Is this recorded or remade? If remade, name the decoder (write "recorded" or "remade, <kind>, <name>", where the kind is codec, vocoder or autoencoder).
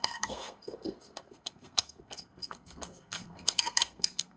remade, codec, SNAC